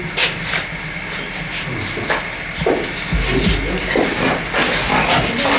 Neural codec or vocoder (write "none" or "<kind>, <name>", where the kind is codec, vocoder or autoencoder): none